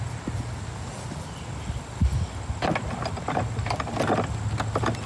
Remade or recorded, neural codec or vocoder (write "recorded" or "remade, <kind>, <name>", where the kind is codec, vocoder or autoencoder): recorded